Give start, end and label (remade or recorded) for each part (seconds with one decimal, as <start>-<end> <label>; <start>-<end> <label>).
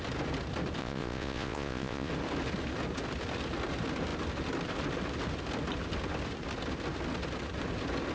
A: 0.0-0.8 recorded; 0.8-2.1 remade; 2.1-8.1 recorded